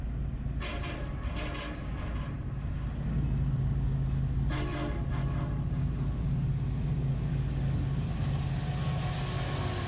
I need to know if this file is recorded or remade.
recorded